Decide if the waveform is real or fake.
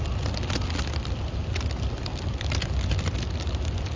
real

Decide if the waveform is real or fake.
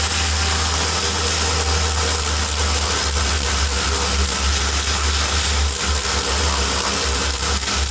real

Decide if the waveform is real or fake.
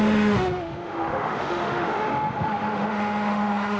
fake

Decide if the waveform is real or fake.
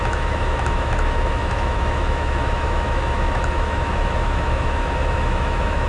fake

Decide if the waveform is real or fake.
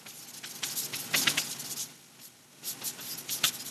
real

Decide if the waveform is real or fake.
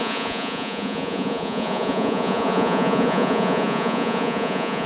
fake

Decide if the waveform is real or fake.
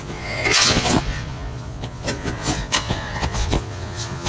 fake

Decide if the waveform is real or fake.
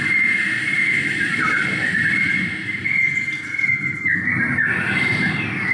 real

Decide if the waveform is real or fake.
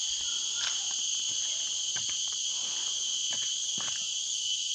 real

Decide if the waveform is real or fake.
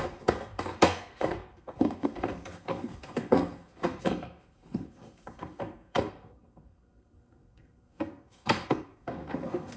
fake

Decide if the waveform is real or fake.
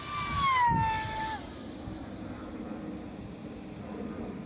real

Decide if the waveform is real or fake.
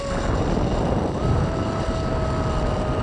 real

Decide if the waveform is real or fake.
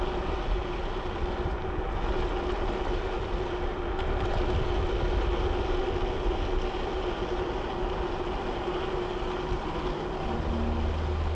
real